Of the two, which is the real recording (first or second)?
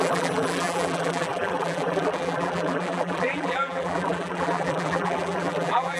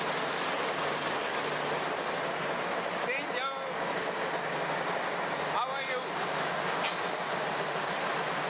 second